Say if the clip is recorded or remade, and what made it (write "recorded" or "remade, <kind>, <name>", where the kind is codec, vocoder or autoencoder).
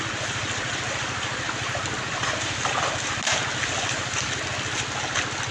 recorded